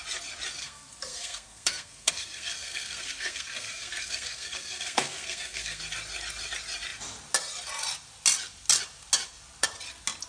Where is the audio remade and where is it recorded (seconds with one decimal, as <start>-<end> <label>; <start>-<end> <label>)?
0.0-0.6 recorded; 0.6-5.8 remade; 5.8-10.3 recorded